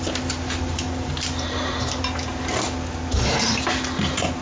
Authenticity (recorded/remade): recorded